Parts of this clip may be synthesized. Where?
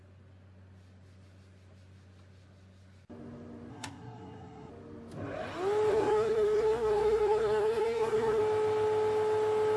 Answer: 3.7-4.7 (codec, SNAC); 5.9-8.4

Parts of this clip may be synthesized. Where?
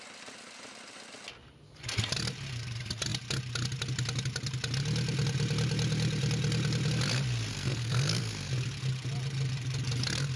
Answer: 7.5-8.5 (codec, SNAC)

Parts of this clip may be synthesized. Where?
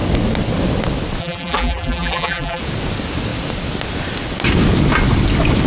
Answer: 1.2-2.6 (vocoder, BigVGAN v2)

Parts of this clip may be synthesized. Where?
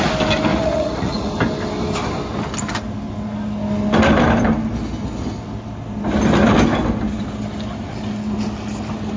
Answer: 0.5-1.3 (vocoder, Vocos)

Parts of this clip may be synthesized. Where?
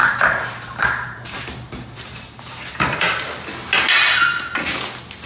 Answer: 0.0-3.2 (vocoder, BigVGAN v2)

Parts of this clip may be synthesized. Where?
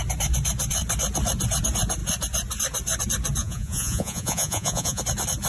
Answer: 3.4-5.0 (vocoder, Vocos)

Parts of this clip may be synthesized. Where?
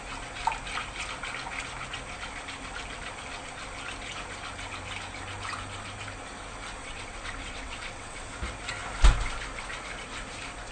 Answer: 6.8-8.3 (vocoder, WaveNeXt)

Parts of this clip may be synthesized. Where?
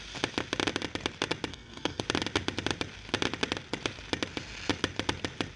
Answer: 1.5-2.0 (codec, SNAC)